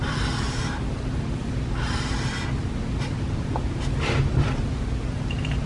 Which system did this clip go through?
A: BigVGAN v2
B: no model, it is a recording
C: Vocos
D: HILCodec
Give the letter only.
B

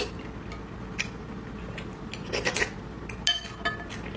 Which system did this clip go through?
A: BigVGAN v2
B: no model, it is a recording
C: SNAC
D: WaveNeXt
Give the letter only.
B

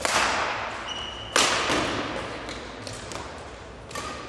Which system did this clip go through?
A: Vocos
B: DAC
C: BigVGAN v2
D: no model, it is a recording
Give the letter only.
D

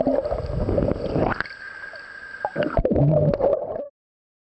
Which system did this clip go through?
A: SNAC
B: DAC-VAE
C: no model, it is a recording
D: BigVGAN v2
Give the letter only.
C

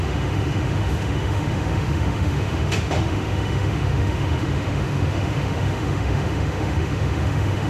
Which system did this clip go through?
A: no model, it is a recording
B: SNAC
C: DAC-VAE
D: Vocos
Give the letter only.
C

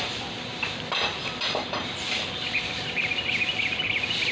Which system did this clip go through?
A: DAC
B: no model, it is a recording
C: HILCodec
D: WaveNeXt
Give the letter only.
B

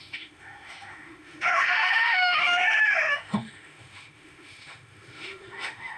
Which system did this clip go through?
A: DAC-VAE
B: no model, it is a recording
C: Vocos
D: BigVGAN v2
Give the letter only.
A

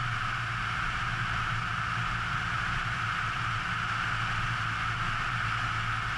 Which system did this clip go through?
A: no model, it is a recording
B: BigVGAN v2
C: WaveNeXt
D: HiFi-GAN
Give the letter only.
A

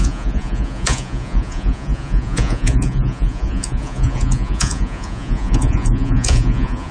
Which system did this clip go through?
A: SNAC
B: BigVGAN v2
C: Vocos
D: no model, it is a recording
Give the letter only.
C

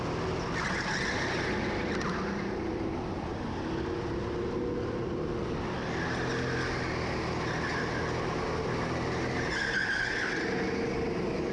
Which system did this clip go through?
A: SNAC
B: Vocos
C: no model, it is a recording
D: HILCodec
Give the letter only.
C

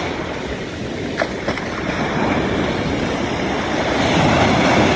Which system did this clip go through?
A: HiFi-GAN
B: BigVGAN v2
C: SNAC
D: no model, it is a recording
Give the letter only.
B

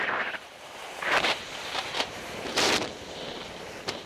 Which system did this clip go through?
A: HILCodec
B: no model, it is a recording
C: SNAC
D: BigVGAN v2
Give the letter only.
D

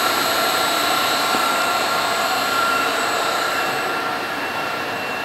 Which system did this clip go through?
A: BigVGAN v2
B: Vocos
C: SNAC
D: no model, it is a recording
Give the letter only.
A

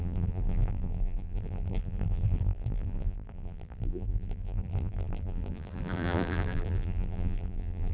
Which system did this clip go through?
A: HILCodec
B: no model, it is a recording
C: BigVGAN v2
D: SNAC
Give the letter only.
C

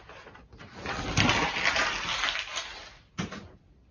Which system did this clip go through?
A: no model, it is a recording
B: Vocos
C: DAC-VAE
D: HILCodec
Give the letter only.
A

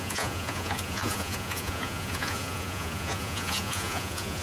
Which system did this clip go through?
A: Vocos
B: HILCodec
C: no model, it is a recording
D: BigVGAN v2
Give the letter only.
A